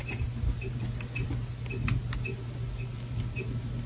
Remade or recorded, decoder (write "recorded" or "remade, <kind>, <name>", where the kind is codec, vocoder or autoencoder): recorded